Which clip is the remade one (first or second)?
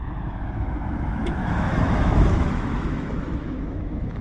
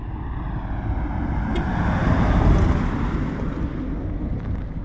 first